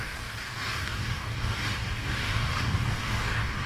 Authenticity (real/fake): fake